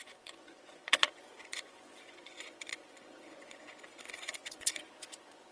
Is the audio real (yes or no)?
no